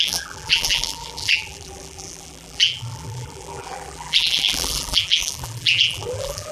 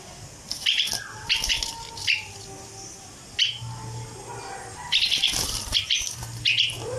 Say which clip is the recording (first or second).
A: second